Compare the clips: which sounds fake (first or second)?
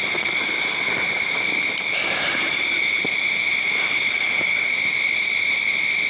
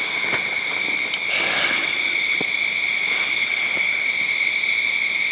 first